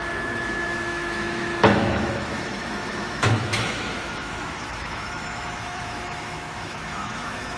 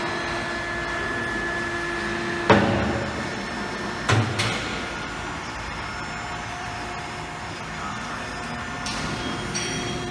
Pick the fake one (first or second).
first